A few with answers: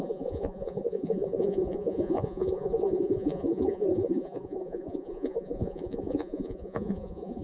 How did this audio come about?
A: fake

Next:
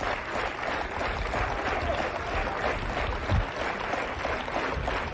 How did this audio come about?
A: real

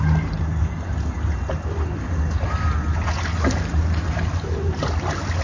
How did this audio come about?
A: real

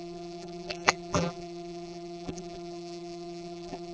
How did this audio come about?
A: fake